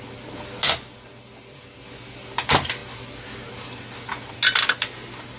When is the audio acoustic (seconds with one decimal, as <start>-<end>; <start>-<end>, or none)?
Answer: 0.0-5.4